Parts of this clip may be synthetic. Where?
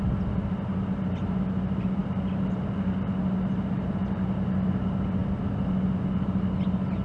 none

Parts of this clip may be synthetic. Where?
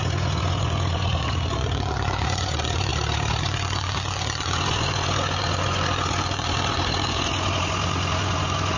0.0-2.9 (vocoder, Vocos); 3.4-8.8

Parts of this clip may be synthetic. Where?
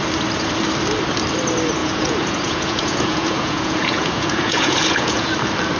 1.8-5.3 (vocoder, Vocos)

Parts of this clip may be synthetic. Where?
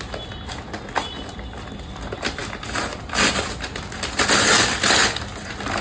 none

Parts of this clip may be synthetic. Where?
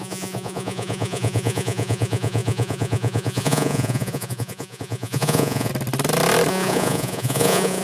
0.0-5.7 (vocoder, Vocos); 6.5-7.8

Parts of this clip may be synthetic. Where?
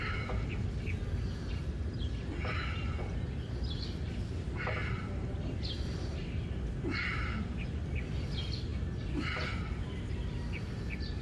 none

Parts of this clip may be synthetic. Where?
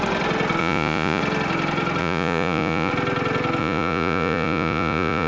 0.6-1.2 (vocoder, Vocos); 2.0-2.9; 3.6-5.3